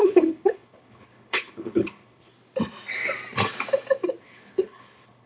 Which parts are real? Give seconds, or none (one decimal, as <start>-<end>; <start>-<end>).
2.3-4.2